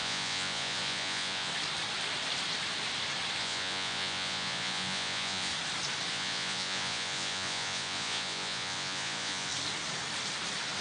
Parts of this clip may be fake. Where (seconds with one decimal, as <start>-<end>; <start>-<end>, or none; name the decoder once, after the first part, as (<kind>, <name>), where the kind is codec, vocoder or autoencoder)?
0.0-1.5 (vocoder, Vocos); 3.4-5.5; 6.1-9.5